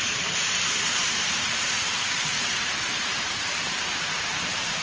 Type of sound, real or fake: fake